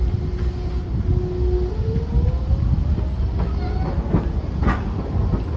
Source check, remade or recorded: recorded